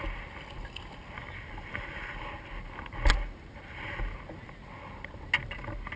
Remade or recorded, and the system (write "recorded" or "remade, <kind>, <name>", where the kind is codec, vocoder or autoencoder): recorded